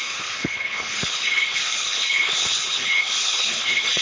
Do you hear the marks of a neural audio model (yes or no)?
yes